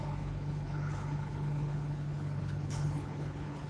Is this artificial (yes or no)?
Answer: yes